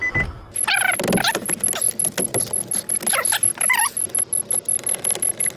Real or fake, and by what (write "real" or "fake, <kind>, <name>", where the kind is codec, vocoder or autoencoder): real